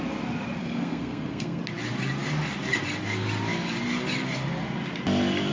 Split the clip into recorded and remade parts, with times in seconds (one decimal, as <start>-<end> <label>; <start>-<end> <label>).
0.0-0.6 recorded; 0.6-1.6 remade; 1.6-5.5 recorded